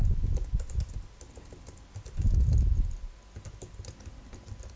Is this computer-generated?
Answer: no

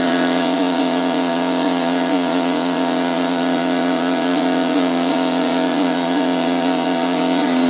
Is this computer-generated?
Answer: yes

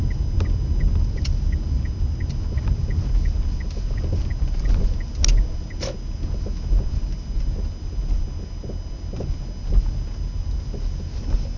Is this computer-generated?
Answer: no